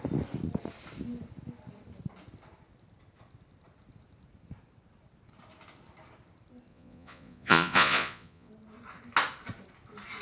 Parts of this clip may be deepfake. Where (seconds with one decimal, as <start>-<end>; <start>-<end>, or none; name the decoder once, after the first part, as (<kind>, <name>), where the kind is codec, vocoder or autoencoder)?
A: 6.7-8.5 (vocoder, Vocos)